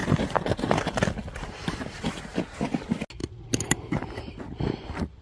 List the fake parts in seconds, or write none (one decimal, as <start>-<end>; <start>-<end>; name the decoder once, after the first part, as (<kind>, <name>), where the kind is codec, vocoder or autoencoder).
none